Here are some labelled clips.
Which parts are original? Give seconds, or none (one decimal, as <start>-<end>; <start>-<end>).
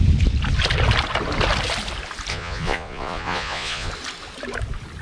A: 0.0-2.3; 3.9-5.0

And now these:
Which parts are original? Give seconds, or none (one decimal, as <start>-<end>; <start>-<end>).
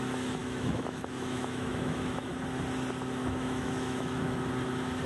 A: 0.0-0.4; 2.3-3.2; 4.5-5.1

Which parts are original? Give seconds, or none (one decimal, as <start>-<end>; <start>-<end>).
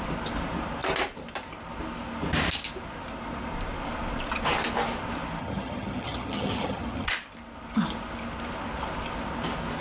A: 0.0-5.4; 7.1-9.8